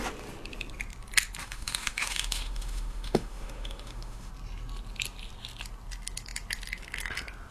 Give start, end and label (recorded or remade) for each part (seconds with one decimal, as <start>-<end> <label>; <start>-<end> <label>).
0.0-1.4 recorded; 1.4-4.3 remade; 4.3-7.5 recorded

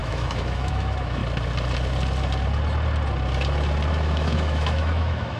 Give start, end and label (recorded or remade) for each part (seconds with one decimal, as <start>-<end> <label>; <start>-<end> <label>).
0.0-1.2 remade; 1.2-3.9 recorded; 3.9-5.4 remade

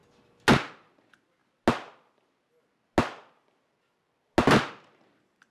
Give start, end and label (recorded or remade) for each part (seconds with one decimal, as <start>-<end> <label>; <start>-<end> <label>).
0.0-5.5 recorded

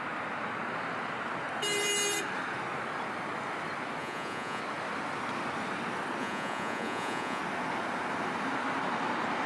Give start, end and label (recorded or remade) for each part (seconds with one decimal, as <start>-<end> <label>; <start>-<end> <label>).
0.0-4.0 recorded; 4.0-4.6 remade; 4.6-6.2 recorded; 6.2-7.4 remade; 7.4-9.5 recorded

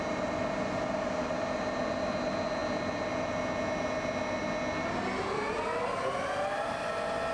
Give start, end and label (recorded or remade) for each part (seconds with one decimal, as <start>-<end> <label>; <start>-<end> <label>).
0.0-7.3 recorded